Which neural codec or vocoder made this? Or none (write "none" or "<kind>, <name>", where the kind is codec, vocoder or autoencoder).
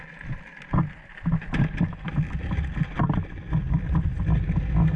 none